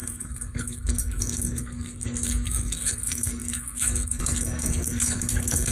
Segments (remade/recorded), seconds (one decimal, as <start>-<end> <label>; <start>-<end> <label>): 0.0-5.7 remade